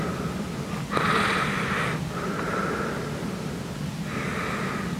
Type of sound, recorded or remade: recorded